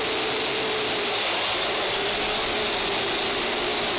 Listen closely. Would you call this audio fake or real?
real